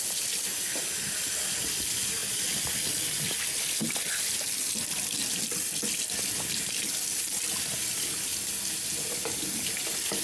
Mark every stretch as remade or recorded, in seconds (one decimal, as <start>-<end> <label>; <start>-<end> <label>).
0.0-10.2 recorded